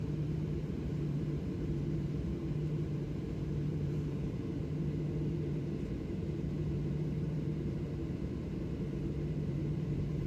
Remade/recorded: remade